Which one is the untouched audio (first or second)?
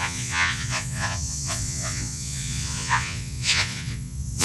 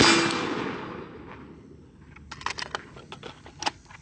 second